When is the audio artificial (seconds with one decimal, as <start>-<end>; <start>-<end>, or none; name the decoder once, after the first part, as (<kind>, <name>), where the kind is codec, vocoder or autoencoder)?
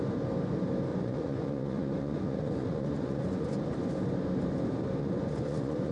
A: 0.9-3.6 (vocoder, Vocos); 5.0-5.9